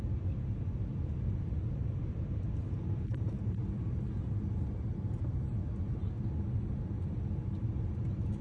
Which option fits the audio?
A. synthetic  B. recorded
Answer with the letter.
B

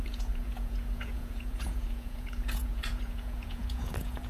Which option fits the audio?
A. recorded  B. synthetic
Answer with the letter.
B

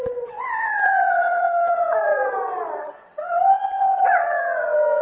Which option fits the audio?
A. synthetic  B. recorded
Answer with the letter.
A